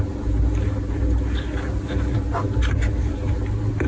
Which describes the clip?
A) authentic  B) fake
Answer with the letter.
A